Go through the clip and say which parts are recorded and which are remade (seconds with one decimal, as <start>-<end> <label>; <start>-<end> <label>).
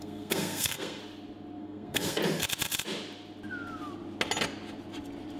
0.0-1.0 remade; 1.0-1.6 recorded; 1.6-2.2 remade; 2.2-5.4 recorded